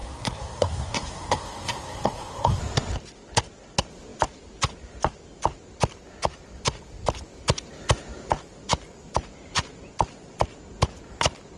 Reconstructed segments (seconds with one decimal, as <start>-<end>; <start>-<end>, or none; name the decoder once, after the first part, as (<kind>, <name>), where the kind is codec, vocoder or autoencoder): 0.0-2.6 (codec, SNAC)